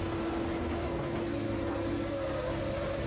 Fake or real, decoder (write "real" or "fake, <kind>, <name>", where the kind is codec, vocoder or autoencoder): real